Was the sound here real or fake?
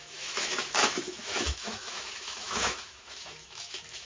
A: fake